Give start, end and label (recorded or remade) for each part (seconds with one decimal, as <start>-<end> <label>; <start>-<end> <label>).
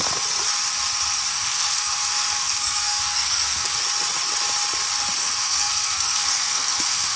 0.0-1.3 recorded; 1.3-3.8 remade; 3.8-5.2 recorded; 5.2-7.2 remade